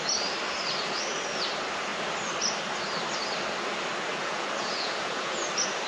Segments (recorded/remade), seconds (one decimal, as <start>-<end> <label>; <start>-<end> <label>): 0.0-4.1 recorded; 4.1-5.4 remade; 5.4-5.9 recorded